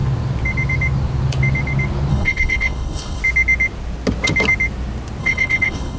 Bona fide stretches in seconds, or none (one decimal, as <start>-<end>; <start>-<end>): 0.0-2.1; 3.2-5.2